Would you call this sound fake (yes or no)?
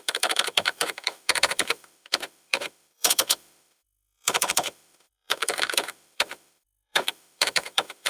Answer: yes